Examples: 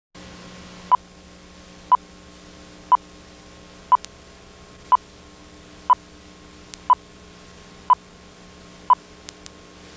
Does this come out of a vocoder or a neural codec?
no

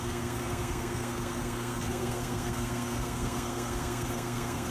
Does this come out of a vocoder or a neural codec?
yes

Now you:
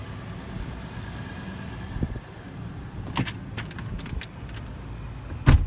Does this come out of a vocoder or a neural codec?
no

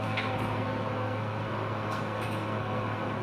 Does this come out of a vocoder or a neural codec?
yes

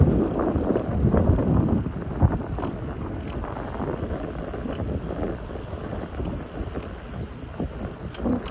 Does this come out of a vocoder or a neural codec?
no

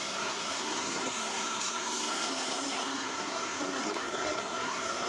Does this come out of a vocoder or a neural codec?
yes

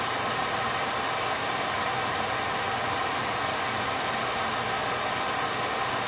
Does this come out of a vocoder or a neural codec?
no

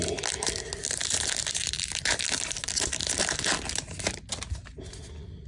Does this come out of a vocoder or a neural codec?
no